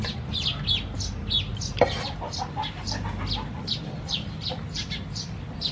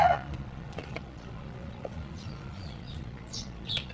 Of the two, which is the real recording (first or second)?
first